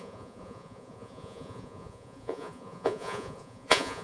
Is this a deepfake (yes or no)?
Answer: yes